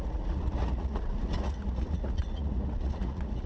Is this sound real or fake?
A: fake